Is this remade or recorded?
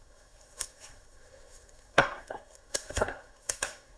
remade